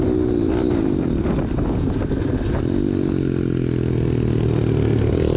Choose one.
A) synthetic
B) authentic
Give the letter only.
B